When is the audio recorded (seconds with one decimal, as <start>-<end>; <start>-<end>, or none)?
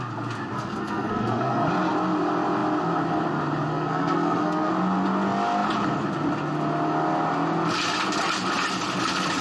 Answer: 0.0-0.5; 1.7-3.7; 4.7-9.4